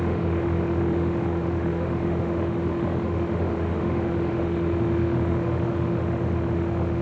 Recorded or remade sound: remade